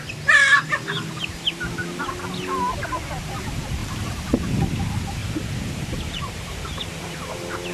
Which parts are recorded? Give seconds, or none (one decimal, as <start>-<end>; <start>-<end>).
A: 0.0-5.2; 7.3-7.7